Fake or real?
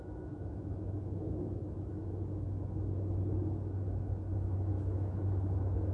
fake